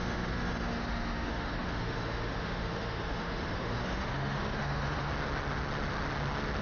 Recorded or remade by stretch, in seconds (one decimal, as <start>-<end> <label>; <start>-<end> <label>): 0.0-5.1 remade; 5.1-6.6 recorded